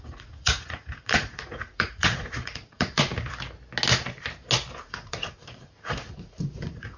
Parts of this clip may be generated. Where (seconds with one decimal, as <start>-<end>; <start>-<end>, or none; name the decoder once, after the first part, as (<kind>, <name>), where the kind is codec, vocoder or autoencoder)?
0.0-3.1 (vocoder, Vocos); 4.8-7.0